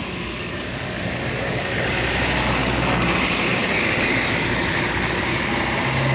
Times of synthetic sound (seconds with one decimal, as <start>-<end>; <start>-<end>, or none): 0.0-2.2; 2.6-3.2; 3.6-5.5

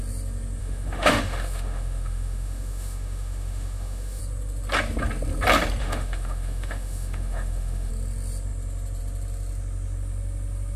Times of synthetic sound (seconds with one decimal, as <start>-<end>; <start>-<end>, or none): 0.6-4.2; 5.8-7.9

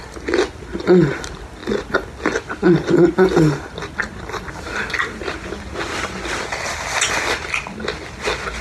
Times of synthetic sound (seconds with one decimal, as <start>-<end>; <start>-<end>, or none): none

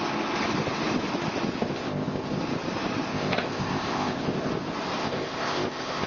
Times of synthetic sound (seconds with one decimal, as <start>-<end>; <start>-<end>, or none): 1.6-2.4; 3.1-4.5; 5.0-6.1

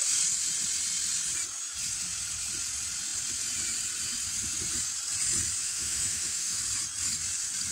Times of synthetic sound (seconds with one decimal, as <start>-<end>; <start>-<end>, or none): 5.6-6.6

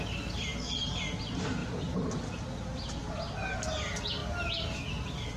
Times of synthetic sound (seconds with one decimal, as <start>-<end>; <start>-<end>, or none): none

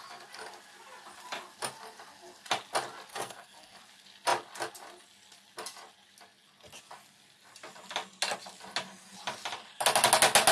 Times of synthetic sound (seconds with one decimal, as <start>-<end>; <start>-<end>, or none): 3.1-3.8